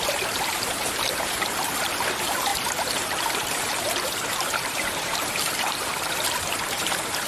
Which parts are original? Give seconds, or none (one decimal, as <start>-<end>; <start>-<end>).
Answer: 5.9-6.6